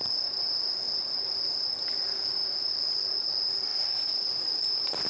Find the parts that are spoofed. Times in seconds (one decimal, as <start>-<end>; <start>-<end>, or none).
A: none